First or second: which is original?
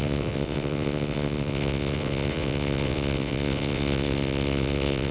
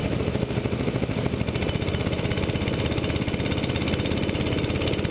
second